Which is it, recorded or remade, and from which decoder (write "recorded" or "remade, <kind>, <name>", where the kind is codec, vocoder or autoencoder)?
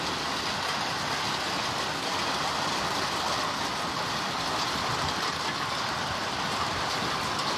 recorded